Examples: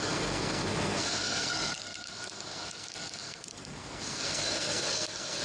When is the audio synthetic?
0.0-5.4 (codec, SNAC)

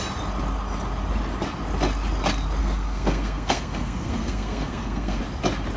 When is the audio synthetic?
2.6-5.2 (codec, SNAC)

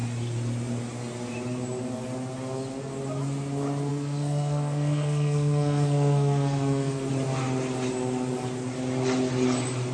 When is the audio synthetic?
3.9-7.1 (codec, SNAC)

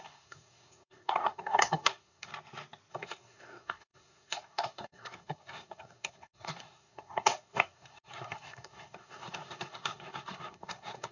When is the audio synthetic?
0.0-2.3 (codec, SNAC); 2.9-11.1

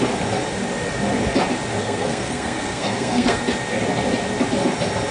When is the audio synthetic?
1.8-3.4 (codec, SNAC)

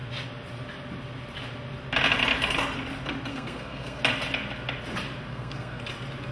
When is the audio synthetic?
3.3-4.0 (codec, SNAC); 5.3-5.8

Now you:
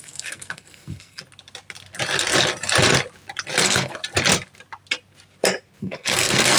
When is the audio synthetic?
0.0-1.2 (codec, SNAC); 3.6-4.0; 5.8-6.6